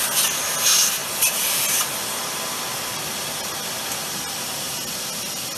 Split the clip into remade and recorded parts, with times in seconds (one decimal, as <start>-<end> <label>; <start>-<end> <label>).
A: 0.0-5.6 recorded